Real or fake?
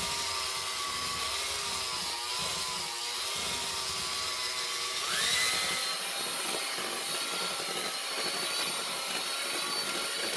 real